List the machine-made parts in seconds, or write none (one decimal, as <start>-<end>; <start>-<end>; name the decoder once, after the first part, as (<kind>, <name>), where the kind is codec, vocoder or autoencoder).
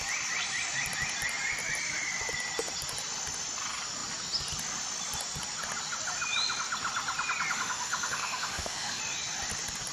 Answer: 7.5-9.0 (autoencoder, DAC-VAE)